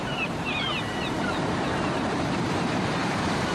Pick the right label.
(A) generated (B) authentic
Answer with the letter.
A